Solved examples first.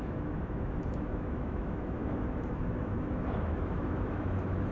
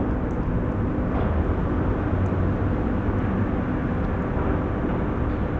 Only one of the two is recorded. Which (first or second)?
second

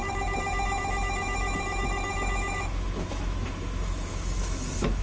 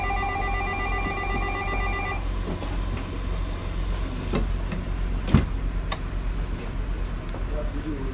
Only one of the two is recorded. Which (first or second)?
second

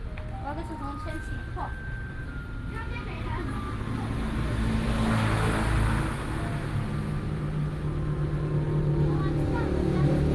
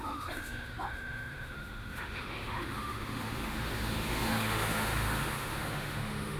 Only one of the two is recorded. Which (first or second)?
first